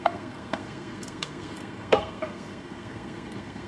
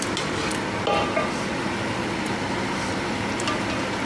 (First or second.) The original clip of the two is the second